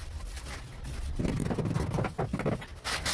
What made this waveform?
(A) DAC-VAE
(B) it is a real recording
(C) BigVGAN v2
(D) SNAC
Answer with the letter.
B